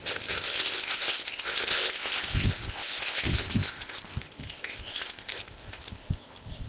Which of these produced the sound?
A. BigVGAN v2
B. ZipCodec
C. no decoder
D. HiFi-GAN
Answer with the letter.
B